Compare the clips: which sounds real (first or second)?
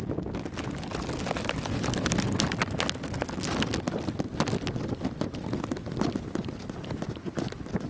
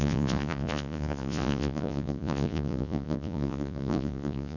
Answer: first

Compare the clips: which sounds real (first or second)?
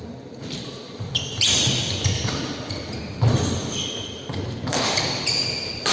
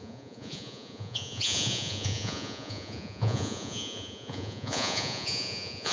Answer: first